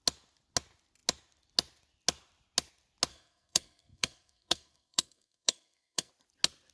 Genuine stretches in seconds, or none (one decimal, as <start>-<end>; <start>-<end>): 0.0-3.1; 6.1-6.7